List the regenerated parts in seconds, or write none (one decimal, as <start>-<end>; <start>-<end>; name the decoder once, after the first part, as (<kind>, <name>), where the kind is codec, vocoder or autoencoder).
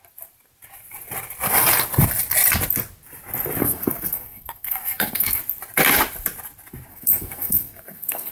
3.6-5.4 (codec, SNAC); 6.9-8.3